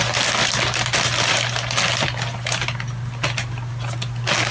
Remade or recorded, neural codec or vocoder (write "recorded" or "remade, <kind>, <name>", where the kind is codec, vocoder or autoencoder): recorded